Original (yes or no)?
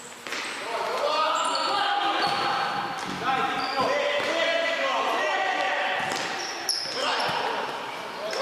yes